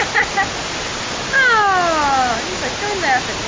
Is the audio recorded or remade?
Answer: recorded